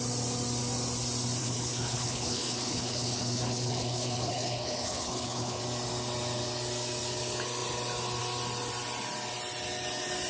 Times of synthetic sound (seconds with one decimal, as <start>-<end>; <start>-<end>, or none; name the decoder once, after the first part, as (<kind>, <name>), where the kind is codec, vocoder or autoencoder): 1.4-5.6 (codec, HILCodec)